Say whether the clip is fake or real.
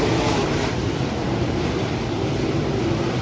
fake